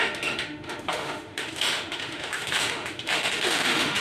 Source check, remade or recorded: remade